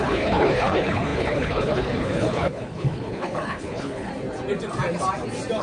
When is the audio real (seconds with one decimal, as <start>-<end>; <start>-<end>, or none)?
4.1-5.6